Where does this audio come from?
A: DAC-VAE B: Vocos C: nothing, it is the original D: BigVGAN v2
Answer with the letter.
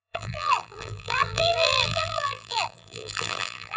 D